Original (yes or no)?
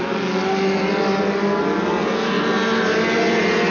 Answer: yes